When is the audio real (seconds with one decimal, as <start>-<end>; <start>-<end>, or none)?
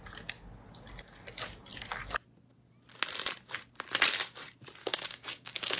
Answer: 0.0-4.8